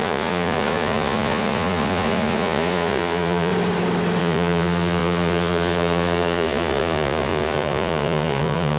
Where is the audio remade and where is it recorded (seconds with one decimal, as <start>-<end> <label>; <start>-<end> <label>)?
0.0-3.5 remade; 3.5-4.2 recorded; 4.2-8.8 remade